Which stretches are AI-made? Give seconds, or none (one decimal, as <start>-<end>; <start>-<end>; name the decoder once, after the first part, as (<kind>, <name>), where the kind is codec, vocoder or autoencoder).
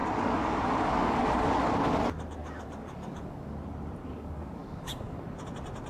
0.0-2.0 (codec, DAC); 2.4-3.5; 4.0-5.4